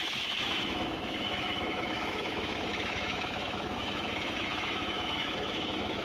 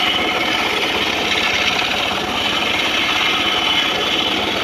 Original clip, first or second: second